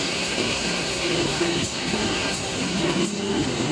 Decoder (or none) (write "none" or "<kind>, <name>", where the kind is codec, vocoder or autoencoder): codec, SNAC